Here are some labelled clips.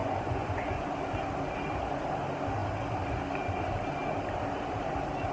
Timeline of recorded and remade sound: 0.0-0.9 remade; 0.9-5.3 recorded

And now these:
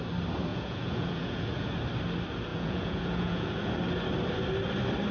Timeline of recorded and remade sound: 0.0-0.5 recorded; 0.5-1.7 remade; 1.7-2.5 recorded; 2.5-3.7 remade; 3.7-5.1 recorded

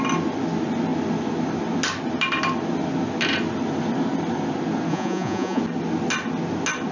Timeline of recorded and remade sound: 0.0-4.9 recorded; 4.9-5.6 remade; 5.6-6.9 recorded